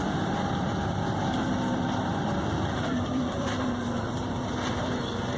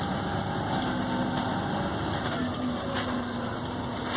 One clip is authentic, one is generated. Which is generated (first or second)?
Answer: first